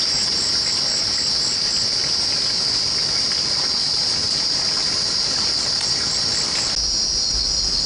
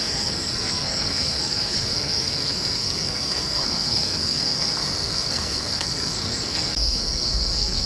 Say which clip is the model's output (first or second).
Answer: second